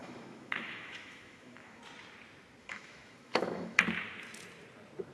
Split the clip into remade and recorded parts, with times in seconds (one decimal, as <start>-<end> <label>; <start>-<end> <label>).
0.0-1.8 remade; 1.8-2.6 recorded; 2.6-3.8 remade; 3.8-5.1 recorded